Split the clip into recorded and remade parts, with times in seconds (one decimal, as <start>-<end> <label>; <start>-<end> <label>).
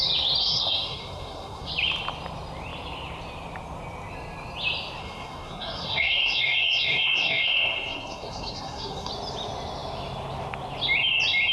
0.0-0.4 recorded; 0.4-1.7 remade; 1.7-5.0 recorded; 5.0-9.1 remade; 9.1-11.5 recorded